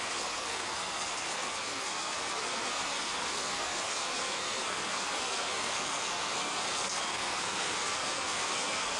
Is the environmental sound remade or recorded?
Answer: remade